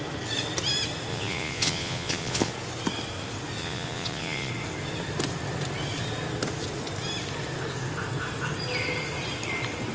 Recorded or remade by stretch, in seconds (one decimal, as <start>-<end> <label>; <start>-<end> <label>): 0.0-1.1 recorded; 1.1-2.5 remade; 2.5-3.6 recorded; 3.6-4.5 remade; 4.5-9.9 recorded